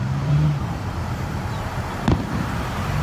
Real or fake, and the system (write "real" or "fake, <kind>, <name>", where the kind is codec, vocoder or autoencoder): fake, vocoder, BigVGAN v2